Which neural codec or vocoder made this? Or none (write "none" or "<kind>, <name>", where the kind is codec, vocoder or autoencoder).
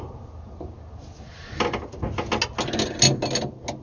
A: none